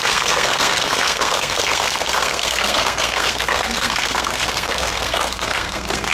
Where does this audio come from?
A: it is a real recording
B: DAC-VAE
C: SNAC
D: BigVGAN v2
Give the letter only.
C